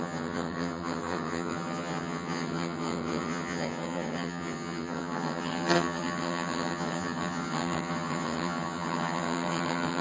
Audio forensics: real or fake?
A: fake